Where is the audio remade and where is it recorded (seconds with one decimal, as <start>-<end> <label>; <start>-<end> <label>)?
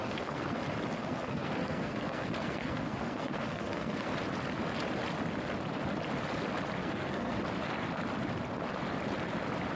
0.0-0.6 remade; 0.6-1.0 recorded; 1.0-4.1 remade; 4.1-6.8 recorded; 6.8-7.4 remade; 7.4-9.8 recorded